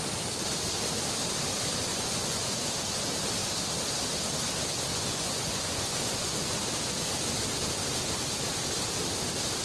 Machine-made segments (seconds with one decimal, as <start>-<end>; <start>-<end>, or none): 1.9-2.7; 4.9-6.6